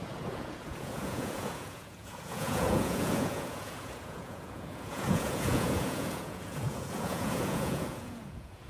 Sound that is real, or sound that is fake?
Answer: fake